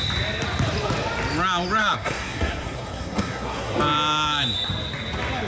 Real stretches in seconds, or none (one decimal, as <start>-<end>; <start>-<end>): 0.0-1.8; 3.8-5.5